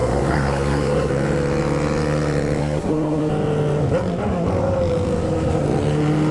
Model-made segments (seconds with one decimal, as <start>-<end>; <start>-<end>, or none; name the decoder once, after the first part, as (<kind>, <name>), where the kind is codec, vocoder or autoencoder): 0.0-1.1 (codec, SNAC); 2.6-3.3